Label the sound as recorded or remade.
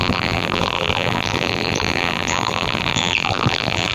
remade